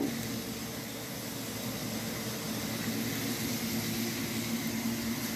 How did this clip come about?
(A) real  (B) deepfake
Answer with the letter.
A